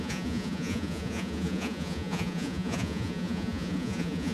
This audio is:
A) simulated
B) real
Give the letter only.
A